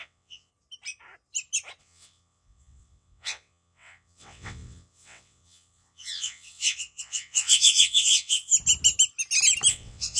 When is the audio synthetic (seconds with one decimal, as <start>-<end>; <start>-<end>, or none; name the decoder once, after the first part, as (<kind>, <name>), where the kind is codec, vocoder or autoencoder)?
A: 0.0-0.5 (vocoder, WaveNeXt); 1.8-8.5; 9.7-10.2